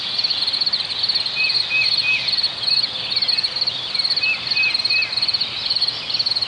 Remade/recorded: recorded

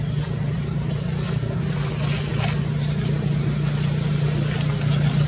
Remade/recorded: recorded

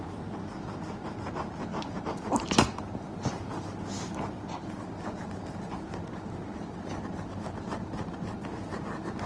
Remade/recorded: recorded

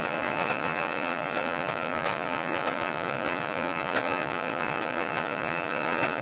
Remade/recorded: remade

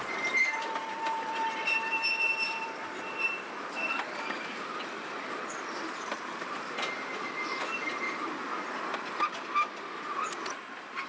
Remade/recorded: remade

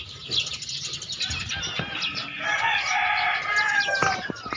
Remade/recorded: recorded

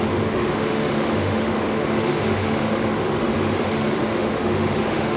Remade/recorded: remade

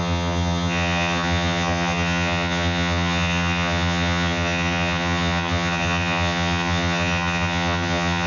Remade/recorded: remade